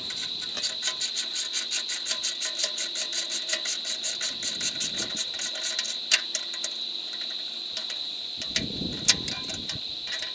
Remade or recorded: recorded